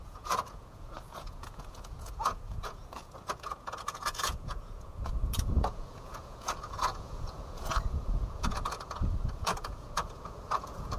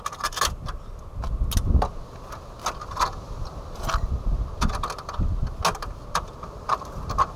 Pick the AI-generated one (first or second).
first